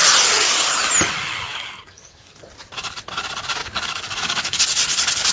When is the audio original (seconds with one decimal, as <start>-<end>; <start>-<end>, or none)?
0.0-1.5; 2.4-3.6; 4.6-5.3